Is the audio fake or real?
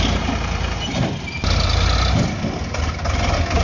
real